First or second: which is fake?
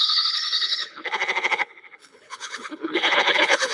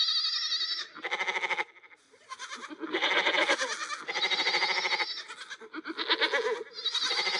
first